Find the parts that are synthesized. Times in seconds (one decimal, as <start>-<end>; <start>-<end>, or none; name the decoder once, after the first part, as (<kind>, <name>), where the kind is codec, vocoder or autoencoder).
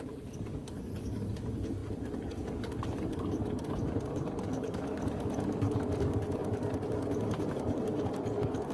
0.0-8.7 (codec, DAC)